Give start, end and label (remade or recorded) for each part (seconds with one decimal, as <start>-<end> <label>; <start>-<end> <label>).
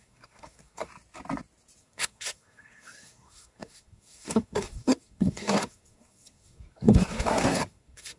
0.0-0.9 remade; 0.9-1.8 recorded; 1.8-8.2 remade